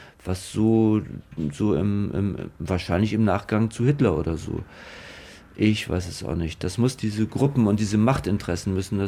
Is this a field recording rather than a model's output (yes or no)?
yes